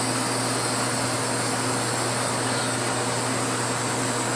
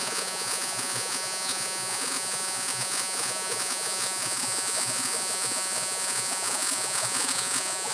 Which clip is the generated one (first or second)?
second